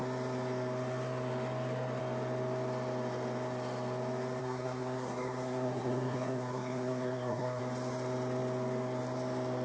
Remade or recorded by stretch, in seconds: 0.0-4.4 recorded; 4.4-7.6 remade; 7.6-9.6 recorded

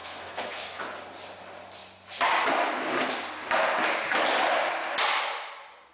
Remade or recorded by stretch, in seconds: 0.0-0.8 remade; 0.8-5.9 recorded